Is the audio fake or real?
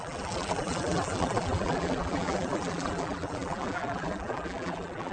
fake